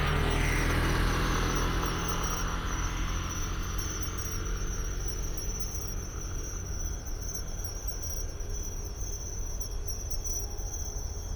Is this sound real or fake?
real